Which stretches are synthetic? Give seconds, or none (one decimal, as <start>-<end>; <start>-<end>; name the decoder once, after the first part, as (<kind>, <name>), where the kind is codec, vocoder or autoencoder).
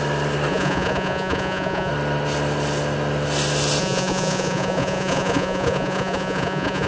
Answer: 0.5-1.9 (vocoder, Vocos); 3.8-6.9